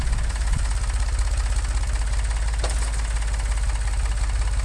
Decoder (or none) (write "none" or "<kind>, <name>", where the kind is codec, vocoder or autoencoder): none